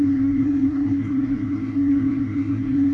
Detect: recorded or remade remade